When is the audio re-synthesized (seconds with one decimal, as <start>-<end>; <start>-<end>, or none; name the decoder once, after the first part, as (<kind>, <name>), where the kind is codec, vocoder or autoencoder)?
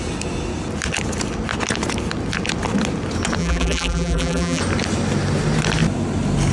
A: 3.4-4.6 (vocoder, BigVGAN v2)